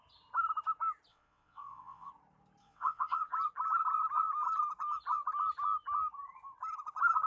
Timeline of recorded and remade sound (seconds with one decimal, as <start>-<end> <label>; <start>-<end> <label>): 0.0-1.1 recorded; 1.1-2.1 remade; 2.1-2.6 recorded; 2.6-3.3 remade; 3.3-7.3 recorded